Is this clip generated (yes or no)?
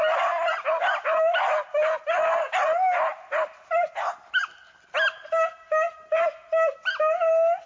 no